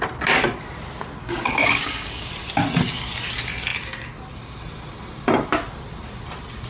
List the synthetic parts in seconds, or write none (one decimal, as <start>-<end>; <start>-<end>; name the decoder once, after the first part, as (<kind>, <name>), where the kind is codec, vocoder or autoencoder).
1.2-2.3 (codec, DAC)